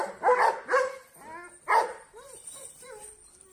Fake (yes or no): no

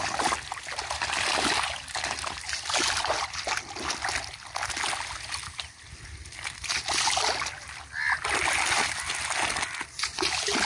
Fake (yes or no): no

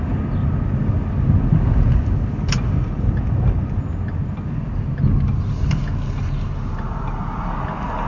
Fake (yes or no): no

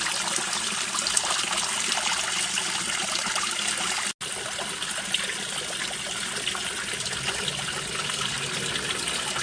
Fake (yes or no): no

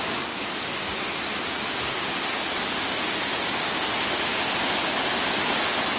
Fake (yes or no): no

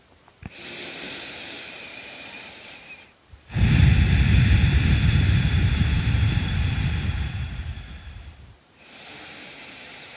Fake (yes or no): yes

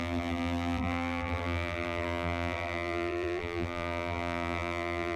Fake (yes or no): yes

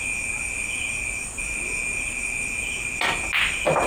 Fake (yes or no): no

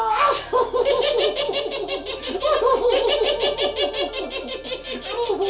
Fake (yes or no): no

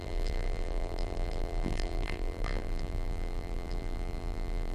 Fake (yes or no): yes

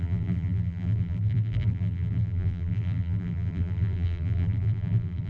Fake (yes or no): yes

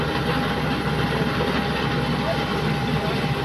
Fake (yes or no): no